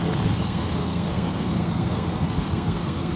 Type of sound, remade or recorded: remade